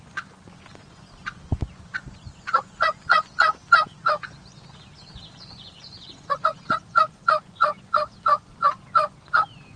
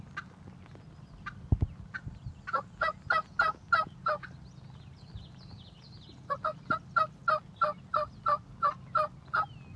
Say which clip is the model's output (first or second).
first